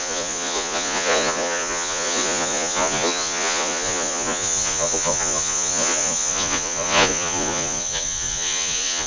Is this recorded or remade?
remade